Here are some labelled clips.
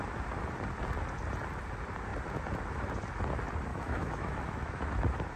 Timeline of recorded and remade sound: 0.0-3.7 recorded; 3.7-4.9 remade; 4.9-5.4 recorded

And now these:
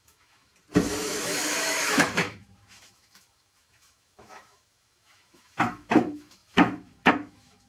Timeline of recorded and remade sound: 0.0-0.5 remade; 0.5-1.0 recorded; 1.0-7.7 remade

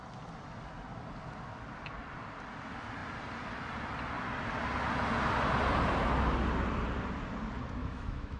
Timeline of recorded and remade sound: 0.0-7.8 recorded; 7.8-8.4 remade

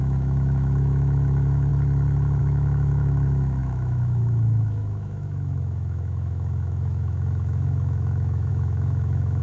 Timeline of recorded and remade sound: 0.0-1.7 remade; 1.7-2.4 recorded; 2.4-9.4 remade

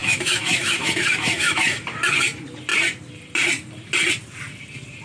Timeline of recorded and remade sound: 0.0-1.8 remade; 1.8-5.0 recorded

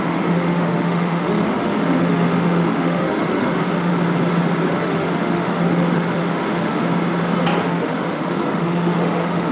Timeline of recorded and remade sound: 0.0-3.9 remade; 3.9-4.7 recorded; 4.7-6.8 remade; 6.8-7.6 recorded; 7.6-9.5 remade

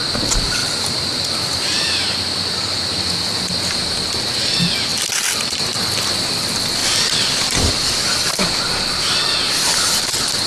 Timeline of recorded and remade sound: 0.0-10.5 recorded